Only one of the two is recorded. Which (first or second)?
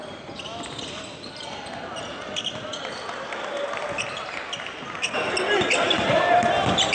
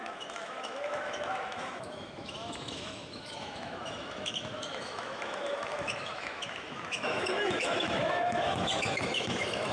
first